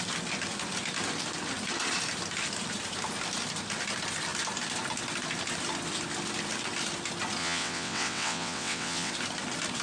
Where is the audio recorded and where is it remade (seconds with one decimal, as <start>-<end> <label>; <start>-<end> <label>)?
0.0-7.4 recorded; 7.4-9.1 remade; 9.1-9.8 recorded